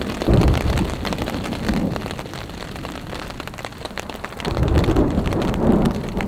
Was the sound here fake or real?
real